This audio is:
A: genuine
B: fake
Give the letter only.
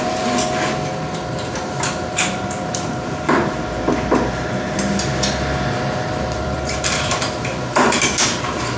B